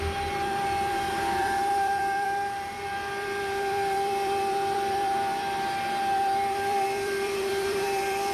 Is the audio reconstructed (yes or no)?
yes